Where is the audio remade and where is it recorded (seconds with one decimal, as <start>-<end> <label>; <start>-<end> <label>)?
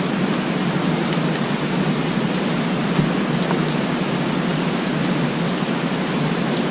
0.0-6.7 recorded